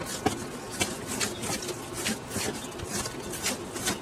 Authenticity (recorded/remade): recorded